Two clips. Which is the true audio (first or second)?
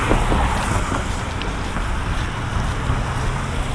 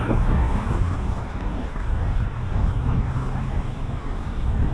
first